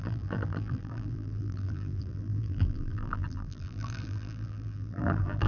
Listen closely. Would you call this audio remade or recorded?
remade